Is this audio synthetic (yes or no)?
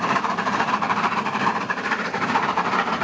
yes